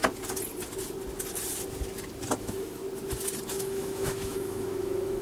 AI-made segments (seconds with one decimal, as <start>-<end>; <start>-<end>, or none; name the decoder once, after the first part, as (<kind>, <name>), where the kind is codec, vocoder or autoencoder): 2.4-2.8 (autoencoder, DAC-VAE); 3.5-5.2